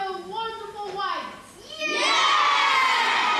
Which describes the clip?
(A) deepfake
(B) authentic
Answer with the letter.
B